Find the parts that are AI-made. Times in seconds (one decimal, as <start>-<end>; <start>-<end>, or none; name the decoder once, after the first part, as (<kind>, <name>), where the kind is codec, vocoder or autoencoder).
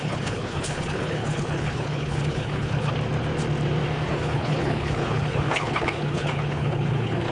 0.0-2.9 (codec, HILCodec); 4.1-7.3